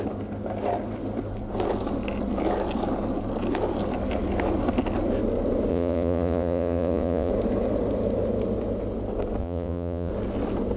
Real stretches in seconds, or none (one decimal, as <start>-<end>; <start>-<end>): 0.0-5.7; 7.3-9.4; 10.1-10.8